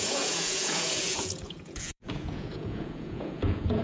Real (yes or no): no